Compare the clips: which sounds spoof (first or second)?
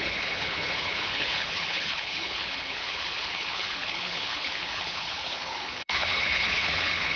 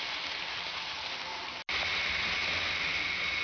first